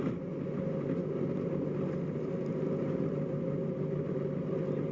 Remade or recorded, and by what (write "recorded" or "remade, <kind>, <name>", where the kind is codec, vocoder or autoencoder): recorded